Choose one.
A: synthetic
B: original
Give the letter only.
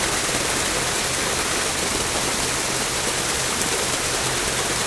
B